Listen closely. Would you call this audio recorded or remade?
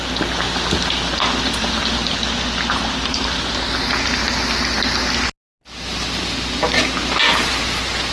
recorded